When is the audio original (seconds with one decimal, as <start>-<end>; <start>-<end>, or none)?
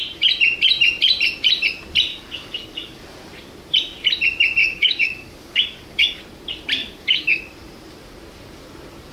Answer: 0.0-2.1; 3.0-4.6; 6.2-6.8; 7.4-9.1